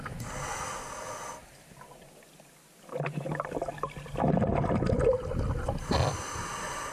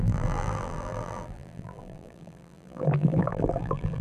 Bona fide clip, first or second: first